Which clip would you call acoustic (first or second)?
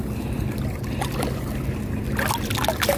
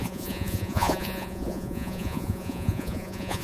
first